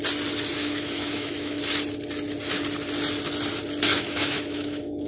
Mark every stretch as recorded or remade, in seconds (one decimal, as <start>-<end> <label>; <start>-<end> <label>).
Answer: 0.0-0.6 recorded; 0.6-1.6 remade; 1.6-3.9 recorded; 3.9-5.1 remade